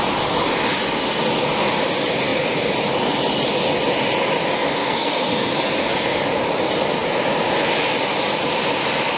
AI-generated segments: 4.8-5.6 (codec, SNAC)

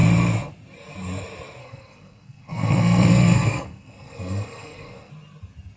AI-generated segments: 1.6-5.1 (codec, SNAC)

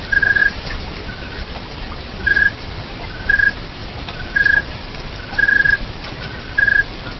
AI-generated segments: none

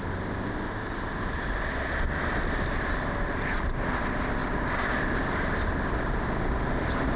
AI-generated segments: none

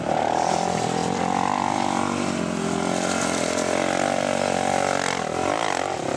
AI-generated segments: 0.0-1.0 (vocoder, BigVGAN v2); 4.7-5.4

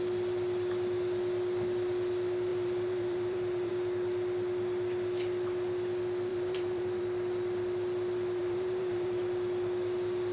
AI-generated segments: 2.5-3.7 (vocoder, BigVGAN v2); 6.3-7.0; 8.4-9.2